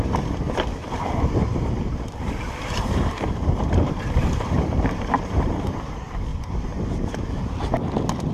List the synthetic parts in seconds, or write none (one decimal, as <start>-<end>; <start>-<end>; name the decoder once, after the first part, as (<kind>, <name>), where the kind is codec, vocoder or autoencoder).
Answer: 0.8-5.7 (vocoder, BigVGAN v2); 6.3-7.4

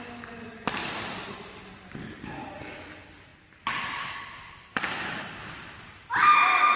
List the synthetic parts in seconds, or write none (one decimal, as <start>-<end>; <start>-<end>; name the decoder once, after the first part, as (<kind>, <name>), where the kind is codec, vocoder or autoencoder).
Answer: none

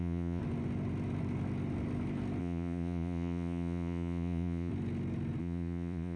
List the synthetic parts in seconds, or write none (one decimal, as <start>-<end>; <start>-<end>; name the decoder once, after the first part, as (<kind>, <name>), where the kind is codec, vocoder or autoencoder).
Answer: 0.0-0.4 (vocoder, Vocos); 2.4-4.7; 5.4-6.2

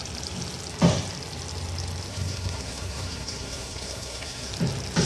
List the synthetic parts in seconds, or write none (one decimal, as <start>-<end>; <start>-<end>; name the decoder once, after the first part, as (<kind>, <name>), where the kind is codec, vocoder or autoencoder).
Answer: 2.1-4.5 (codec, SNAC)

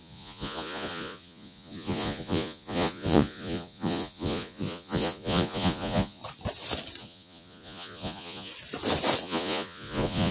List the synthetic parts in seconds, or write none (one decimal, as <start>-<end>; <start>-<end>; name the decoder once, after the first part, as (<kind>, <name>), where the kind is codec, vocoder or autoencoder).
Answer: 0.0-6.2 (vocoder, Vocos); 7.0-8.5; 9.2-10.3

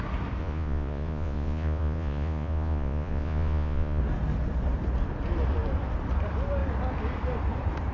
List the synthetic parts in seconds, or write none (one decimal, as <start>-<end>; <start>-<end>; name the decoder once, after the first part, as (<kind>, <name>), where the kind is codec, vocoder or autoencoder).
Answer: 0.4-4.0 (vocoder, Vocos)